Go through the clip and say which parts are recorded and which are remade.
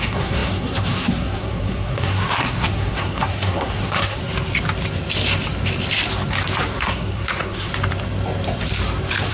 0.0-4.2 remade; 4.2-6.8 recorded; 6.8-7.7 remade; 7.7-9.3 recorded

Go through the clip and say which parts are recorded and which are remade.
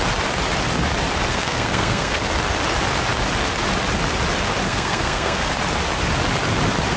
0.0-1.3 recorded; 1.3-2.2 remade; 2.2-4.6 recorded; 4.6-5.5 remade; 5.5-7.0 recorded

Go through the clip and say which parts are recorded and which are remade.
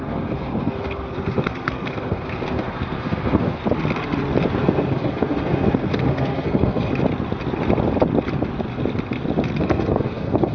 0.0-3.6 remade; 3.6-4.6 recorded; 4.6-6.9 remade; 6.9-9.6 recorded; 9.6-10.5 remade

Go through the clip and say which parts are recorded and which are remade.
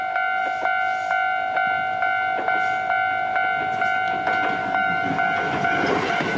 0.0-4.6 recorded; 4.6-5.1 remade; 5.1-6.4 recorded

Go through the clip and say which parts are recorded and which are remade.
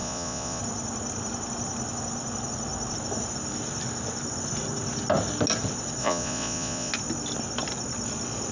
0.0-0.6 remade; 0.6-6.0 recorded; 6.0-6.9 remade; 6.9-8.5 recorded